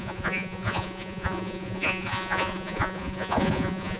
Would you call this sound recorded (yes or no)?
no